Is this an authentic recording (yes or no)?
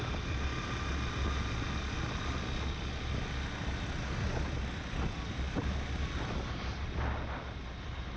yes